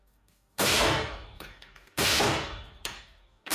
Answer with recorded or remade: remade